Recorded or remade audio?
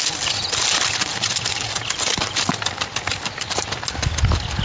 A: recorded